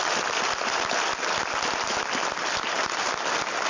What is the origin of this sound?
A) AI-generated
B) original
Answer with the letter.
B